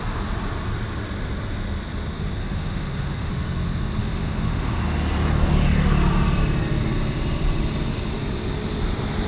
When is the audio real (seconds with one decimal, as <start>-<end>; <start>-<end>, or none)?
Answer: 0.0-2.4; 3.3-4.0; 4.8-9.3